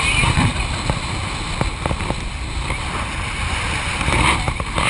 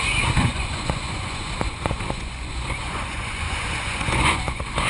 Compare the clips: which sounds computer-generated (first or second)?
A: second